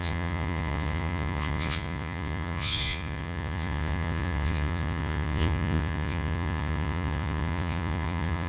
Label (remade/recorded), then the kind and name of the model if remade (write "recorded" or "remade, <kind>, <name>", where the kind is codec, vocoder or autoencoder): remade, vocoder, Vocos